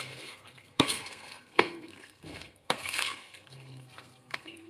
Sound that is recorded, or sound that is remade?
remade